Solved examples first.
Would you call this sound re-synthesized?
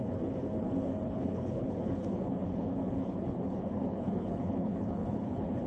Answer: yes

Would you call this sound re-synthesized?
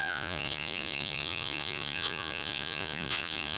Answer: yes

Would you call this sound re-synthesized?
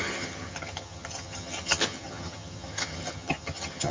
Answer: yes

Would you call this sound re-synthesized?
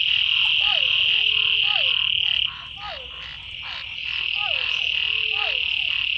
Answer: no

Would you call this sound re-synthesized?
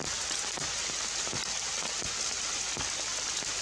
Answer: no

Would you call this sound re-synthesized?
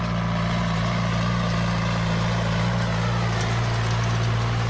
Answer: no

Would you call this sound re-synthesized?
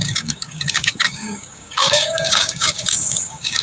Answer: yes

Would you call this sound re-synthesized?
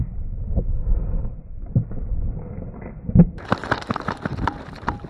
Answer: no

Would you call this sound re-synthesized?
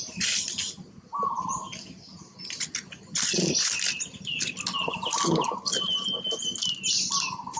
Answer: no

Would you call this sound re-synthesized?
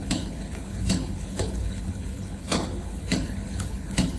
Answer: yes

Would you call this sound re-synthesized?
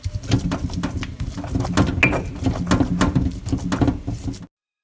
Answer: no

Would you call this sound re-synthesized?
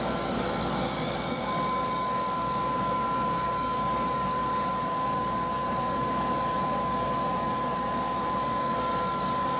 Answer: yes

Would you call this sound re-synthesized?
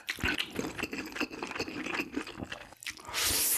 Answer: no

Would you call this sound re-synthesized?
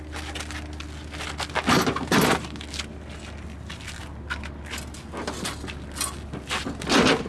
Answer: no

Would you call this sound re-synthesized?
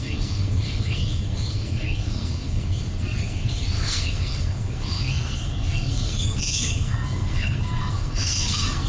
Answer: yes